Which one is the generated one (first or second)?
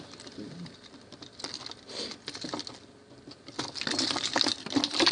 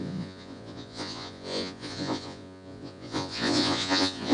second